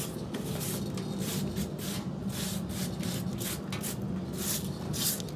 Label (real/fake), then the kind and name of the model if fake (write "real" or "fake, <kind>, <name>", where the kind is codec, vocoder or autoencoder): real